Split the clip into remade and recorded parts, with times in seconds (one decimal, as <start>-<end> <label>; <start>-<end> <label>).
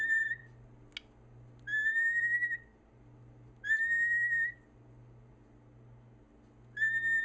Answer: 0.0-7.2 recorded